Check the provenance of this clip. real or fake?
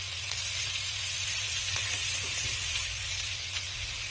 fake